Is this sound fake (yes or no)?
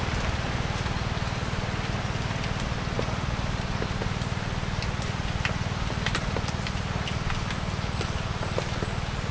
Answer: no